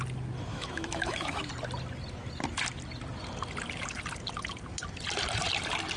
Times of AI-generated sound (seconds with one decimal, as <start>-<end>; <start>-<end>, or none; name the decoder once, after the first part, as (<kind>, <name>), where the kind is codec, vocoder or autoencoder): 0.5-1.5 (autoencoder, DAC-VAE)